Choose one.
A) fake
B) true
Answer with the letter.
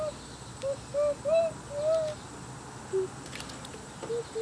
B